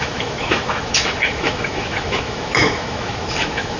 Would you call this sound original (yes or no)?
no